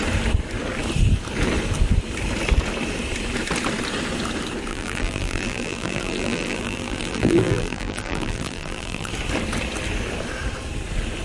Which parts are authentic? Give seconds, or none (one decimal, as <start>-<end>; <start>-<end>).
0.0-4.7; 9.1-11.2